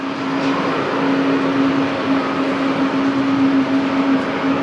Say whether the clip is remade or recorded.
recorded